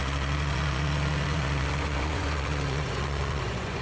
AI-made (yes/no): yes